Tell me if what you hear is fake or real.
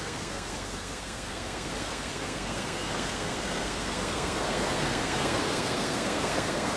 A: fake